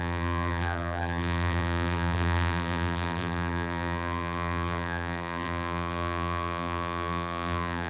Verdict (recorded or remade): remade